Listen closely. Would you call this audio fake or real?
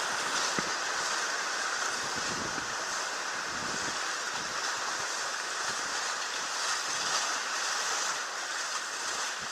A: real